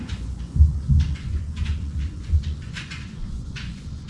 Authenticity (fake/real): fake